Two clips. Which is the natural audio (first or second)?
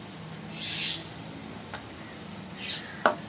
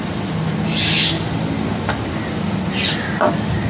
second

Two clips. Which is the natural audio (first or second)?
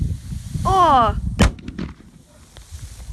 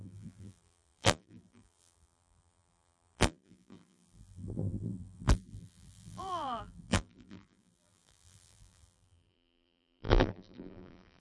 first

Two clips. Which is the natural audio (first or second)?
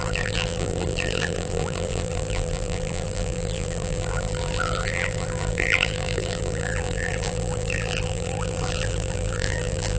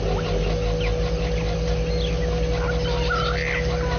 second